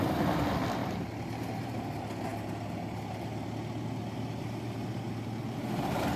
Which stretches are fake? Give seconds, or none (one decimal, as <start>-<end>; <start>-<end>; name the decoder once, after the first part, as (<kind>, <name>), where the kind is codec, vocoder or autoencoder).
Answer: 0.8-1.9 (vocoder, BigVGAN v2)